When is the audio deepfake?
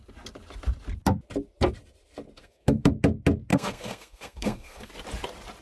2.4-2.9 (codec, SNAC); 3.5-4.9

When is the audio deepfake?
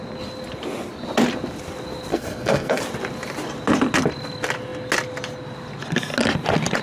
2.1-2.8 (codec, SNAC)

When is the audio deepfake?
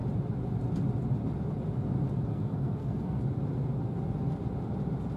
2.3-3.2 (codec, SNAC)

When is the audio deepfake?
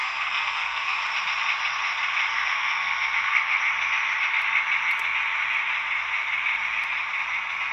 0.0-1.0 (codec, SNAC); 2.3-3.6